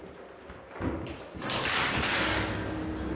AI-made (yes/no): no